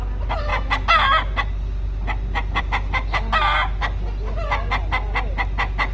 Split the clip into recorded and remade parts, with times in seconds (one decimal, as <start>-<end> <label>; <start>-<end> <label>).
0.0-5.9 recorded